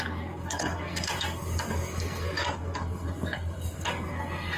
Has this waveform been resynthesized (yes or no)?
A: yes